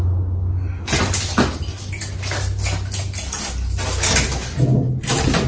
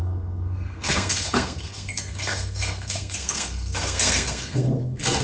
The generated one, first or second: second